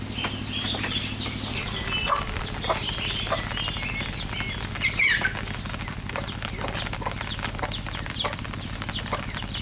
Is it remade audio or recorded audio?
recorded